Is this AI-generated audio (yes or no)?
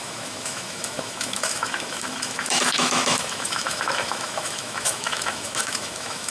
yes